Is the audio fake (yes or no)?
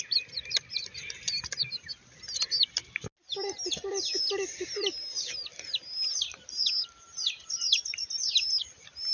no